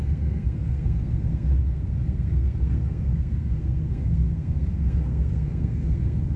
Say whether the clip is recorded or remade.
remade